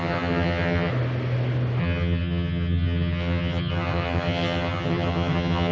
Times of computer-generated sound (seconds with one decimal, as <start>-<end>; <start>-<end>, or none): 0.0-0.9; 1.8-5.7